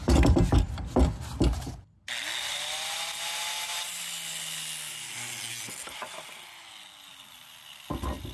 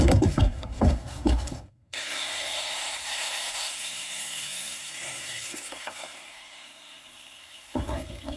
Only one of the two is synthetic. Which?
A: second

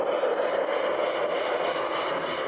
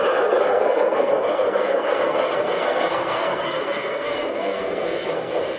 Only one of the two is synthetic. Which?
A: second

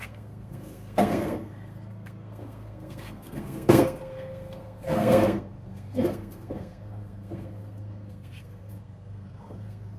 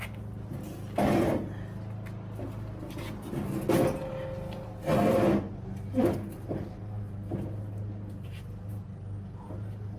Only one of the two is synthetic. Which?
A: first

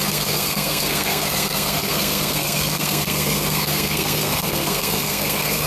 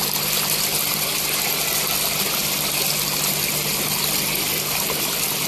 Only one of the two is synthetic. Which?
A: first